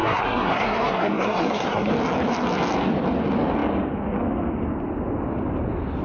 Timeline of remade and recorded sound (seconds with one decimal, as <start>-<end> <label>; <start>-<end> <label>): 0.0-1.9 remade; 1.9-6.0 recorded